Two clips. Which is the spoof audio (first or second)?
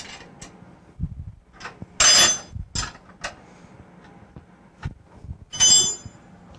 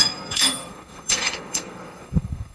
second